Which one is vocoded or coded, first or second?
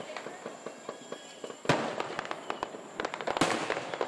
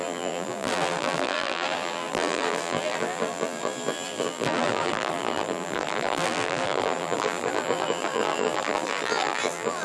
second